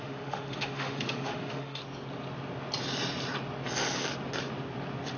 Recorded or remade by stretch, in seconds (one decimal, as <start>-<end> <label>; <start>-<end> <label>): 0.0-1.8 remade; 1.8-5.2 recorded